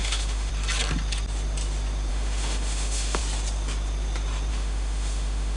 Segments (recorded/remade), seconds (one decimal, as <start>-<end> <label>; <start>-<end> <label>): 0.0-0.5 remade; 0.5-2.1 recorded; 2.1-3.2 remade; 3.2-4.5 recorded; 4.5-5.6 remade

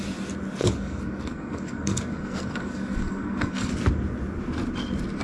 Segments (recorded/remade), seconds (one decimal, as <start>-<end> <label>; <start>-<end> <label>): 0.0-0.6 recorded; 0.6-3.7 remade; 3.7-5.2 recorded

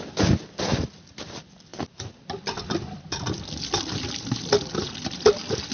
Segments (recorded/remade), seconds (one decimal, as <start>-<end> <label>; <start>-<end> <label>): 0.0-5.7 recorded